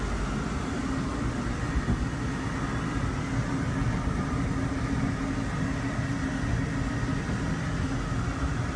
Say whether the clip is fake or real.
real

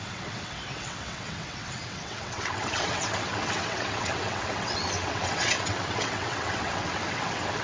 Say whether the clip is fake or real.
fake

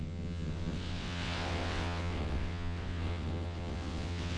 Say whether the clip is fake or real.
fake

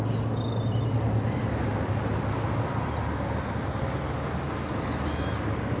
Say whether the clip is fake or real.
real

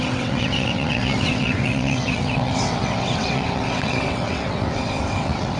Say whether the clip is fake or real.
fake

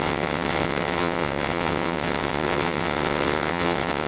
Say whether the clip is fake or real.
fake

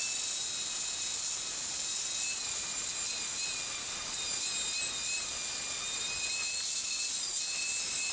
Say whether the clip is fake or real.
real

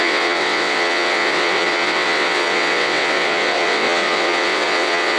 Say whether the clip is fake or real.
fake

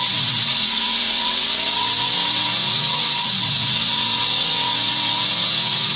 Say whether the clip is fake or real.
fake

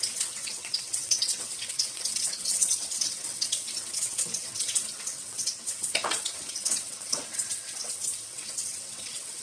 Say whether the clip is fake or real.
fake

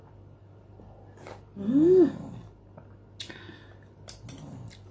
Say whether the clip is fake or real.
real